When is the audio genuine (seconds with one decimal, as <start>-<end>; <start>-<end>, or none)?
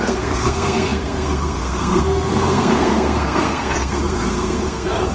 none